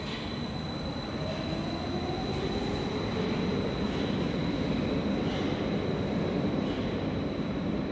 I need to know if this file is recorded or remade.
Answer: recorded